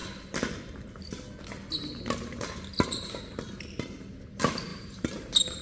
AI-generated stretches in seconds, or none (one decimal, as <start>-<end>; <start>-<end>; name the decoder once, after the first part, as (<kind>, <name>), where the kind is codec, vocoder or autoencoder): 4.7-5.6 (vocoder, BigVGAN v2)